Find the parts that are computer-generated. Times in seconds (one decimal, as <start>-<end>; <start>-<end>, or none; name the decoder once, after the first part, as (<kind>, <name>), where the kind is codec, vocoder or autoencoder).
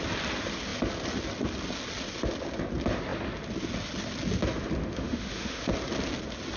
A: 4.8-5.6 (autoencoder, DAC-VAE)